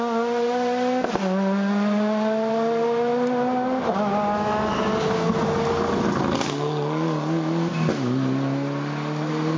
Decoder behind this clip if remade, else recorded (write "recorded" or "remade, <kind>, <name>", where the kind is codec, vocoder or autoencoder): recorded